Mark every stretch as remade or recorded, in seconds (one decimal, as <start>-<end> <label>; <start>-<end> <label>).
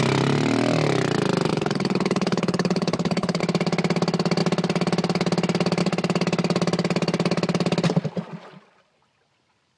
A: 0.0-1.5 recorded; 1.5-3.4 remade; 3.4-9.8 recorded